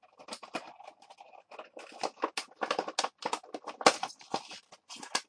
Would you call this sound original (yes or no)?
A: yes